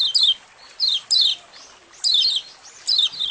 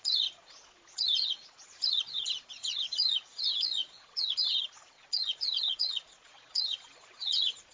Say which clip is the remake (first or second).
second